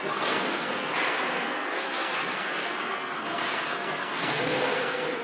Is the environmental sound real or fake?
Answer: fake